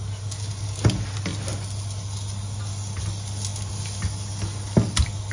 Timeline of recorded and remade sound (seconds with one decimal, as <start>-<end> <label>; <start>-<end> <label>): 0.0-5.3 recorded